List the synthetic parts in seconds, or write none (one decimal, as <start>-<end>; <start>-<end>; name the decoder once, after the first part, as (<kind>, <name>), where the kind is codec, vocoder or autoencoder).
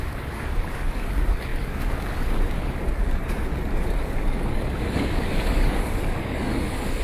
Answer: 0.0-7.0 (codec, DAC)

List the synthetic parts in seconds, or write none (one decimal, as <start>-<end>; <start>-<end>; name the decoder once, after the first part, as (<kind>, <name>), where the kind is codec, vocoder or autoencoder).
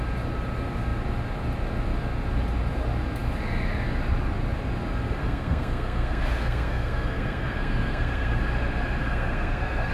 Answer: 5.2-8.4 (codec, SNAC); 9.0-9.9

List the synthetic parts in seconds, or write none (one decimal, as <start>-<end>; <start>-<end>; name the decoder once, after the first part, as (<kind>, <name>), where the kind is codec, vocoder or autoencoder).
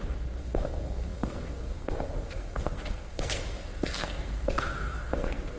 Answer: 0.0-5.6 (codec, SNAC)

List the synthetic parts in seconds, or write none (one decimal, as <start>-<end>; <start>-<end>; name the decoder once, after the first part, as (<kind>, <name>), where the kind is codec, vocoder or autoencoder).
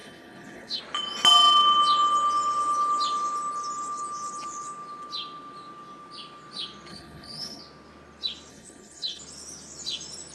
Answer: 0.0-0.8 (codec, HILCodec); 6.9-7.6; 8.5-9.2